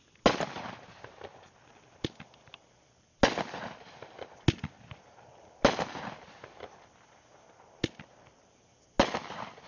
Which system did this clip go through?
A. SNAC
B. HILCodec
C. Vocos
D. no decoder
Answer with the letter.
D